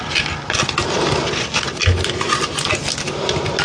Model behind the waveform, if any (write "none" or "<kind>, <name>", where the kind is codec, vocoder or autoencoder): none